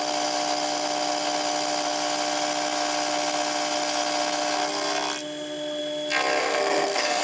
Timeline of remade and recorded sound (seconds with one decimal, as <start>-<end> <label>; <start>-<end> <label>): 0.0-6.4 recorded; 6.4-7.2 remade